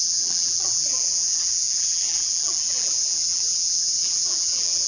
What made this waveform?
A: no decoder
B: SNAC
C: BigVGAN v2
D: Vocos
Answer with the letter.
C